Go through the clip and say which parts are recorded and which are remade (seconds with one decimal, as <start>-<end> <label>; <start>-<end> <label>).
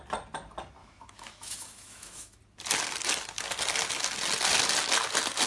0.0-0.8 recorded; 0.8-2.4 remade; 2.4-5.5 recorded